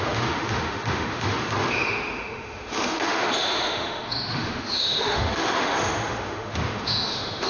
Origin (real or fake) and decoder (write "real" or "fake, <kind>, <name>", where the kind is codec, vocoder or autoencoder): fake, autoencoder, DAC-VAE